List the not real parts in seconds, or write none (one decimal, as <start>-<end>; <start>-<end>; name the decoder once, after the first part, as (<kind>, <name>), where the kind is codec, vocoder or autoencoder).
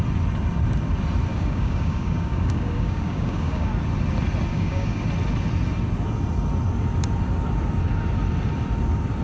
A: 1.3-3.7 (codec, DAC); 4.5-5.0